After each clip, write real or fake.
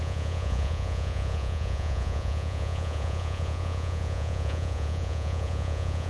fake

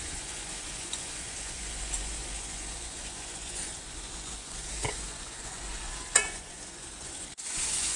fake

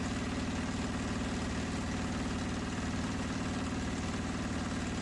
real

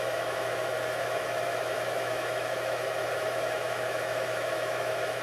fake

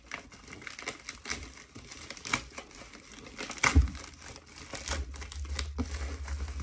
real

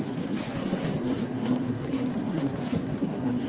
fake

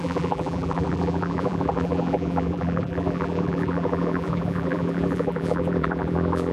fake